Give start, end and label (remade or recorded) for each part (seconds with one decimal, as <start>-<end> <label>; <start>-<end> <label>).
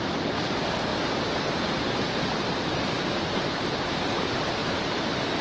0.0-0.9 recorded; 0.9-3.9 remade; 3.9-4.6 recorded; 4.6-5.4 remade